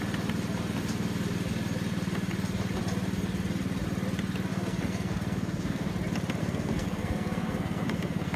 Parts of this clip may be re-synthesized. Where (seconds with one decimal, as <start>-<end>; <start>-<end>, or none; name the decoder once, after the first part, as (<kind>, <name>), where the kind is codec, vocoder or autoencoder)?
4.5-5.9 (codec, SNAC); 6.4-8.4